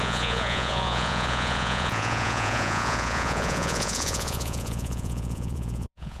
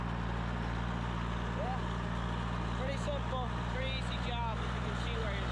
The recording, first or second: second